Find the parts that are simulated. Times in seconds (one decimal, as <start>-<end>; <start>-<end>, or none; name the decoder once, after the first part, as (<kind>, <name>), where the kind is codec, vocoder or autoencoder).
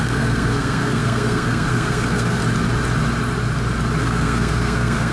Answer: 0.0-2.4 (codec, SNAC); 4.0-5.1